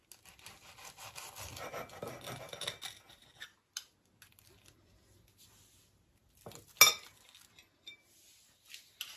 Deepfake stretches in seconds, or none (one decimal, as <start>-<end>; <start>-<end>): none